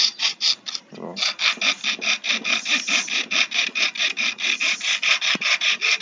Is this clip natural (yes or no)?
yes